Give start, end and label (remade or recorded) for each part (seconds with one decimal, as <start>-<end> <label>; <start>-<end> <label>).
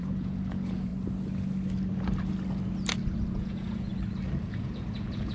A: 0.0-0.9 remade; 0.9-3.3 recorded; 3.3-3.9 remade; 3.9-4.4 recorded; 4.4-5.3 remade